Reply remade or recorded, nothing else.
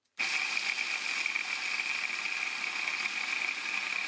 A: remade